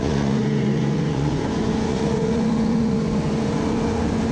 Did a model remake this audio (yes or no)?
yes